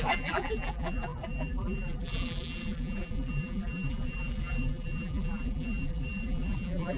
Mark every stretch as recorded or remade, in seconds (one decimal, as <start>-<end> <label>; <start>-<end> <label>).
0.0-7.0 remade